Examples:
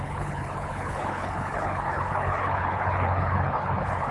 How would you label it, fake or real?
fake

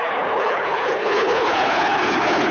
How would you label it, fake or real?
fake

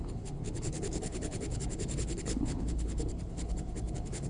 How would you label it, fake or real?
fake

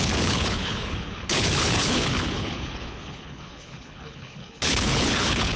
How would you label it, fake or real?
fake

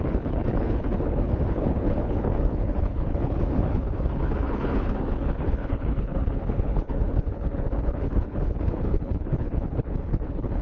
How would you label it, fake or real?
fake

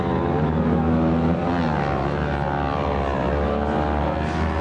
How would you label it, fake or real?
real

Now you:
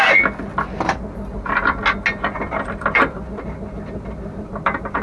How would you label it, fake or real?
real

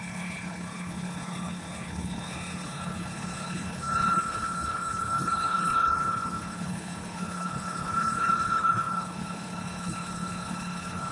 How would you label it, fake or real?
fake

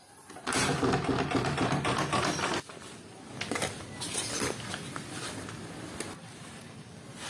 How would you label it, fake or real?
real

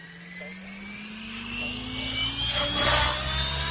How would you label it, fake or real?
real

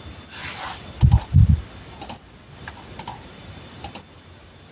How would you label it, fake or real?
real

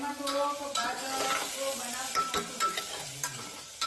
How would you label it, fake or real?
real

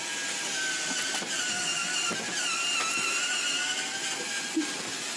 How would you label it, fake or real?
real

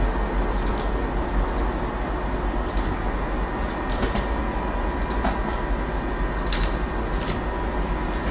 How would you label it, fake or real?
real